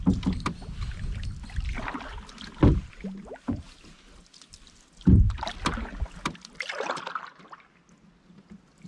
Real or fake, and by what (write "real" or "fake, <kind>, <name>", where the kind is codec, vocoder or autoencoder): real